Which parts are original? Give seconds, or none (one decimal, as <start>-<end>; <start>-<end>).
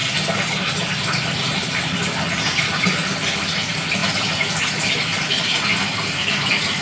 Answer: 0.0-6.8